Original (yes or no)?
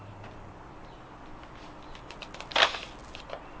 yes